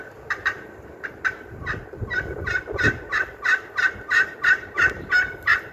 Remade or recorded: remade